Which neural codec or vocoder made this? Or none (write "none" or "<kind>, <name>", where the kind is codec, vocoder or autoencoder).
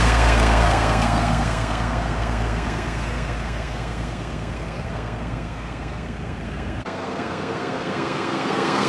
codec, SNAC